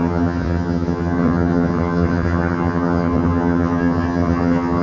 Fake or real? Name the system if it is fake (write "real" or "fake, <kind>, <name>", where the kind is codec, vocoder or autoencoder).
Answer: fake, vocoder, HiFi-GAN